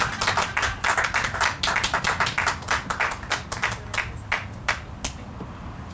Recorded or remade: recorded